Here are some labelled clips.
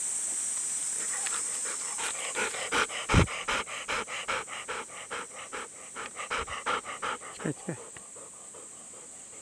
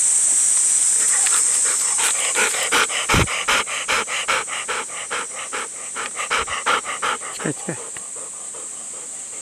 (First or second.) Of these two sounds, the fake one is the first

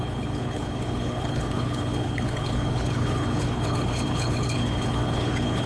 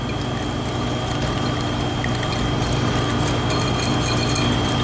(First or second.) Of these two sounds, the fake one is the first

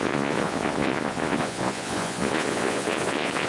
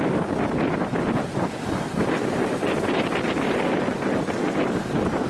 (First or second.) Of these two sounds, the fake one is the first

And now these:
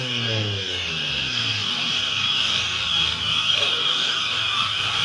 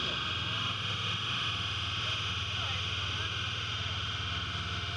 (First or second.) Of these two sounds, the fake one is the first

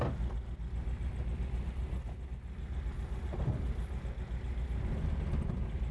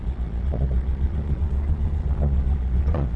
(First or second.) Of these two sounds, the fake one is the second